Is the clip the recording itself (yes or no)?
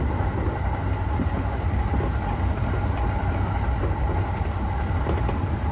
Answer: yes